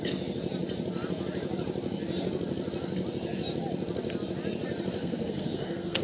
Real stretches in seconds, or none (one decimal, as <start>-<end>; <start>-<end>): 0.0-5.0